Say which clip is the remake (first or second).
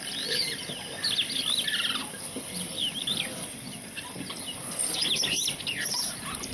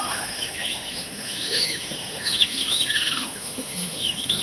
second